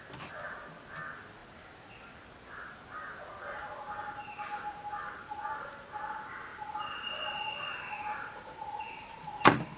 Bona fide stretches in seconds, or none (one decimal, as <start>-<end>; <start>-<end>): 0.0-9.8